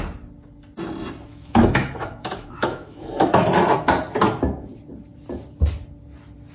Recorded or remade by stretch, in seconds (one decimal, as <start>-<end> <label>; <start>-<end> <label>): 0.0-1.3 recorded; 1.3-3.6 remade; 3.6-6.5 recorded